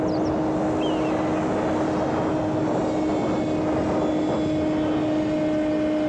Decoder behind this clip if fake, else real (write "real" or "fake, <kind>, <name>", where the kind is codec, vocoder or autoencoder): real